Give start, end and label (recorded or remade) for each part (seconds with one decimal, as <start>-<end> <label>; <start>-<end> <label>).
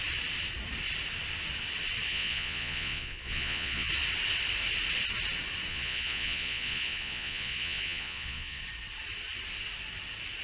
0.0-2.1 recorded; 2.1-3.9 remade; 3.9-5.7 recorded; 5.7-8.6 remade; 8.6-10.4 recorded